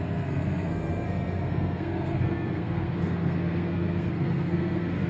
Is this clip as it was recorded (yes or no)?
no